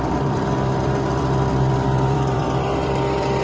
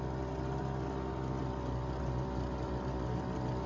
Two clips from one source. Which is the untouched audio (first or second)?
second